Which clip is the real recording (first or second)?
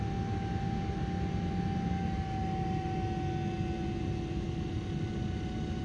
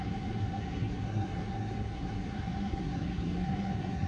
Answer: first